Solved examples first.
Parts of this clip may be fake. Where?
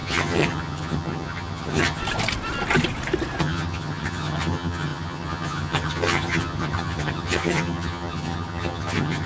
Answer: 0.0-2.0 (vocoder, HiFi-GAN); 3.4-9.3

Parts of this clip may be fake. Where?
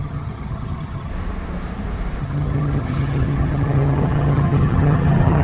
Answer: 0.0-1.1 (vocoder, HiFi-GAN); 2.2-5.4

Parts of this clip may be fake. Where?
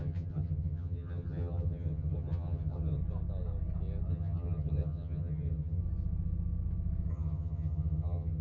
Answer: 0.0-3.0 (vocoder, HiFi-GAN); 4.1-5.8; 7.1-8.4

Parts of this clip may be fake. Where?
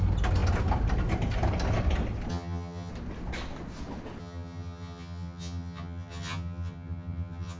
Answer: 2.3-2.9 (vocoder, HiFi-GAN); 4.2-7.6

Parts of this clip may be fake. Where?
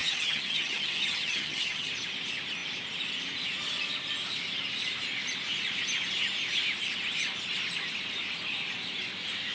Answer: 0.0-1.9 (vocoder, HiFi-GAN)